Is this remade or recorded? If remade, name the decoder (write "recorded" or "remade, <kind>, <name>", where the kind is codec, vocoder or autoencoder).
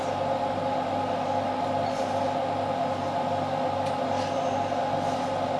recorded